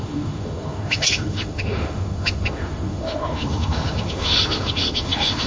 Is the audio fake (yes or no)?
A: yes